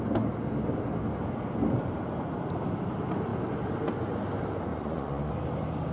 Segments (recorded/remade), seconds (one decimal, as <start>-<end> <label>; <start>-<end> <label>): 0.0-4.7 recorded; 4.7-5.3 remade; 5.3-5.9 recorded